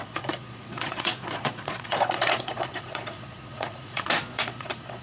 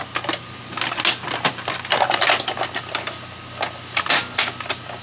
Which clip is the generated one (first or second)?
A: first